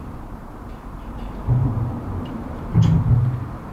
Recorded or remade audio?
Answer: remade